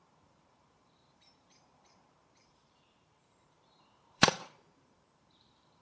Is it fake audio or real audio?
fake